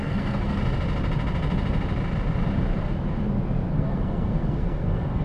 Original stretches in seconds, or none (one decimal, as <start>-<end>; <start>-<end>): 0.6-3.7